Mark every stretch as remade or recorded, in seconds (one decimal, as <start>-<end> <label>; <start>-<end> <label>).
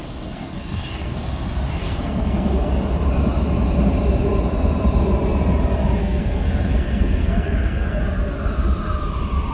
0.0-1.3 remade; 1.3-1.8 recorded; 1.8-2.7 remade; 2.7-6.0 recorded; 6.0-8.0 remade; 8.0-9.5 recorded